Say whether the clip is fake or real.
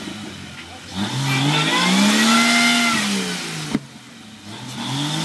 real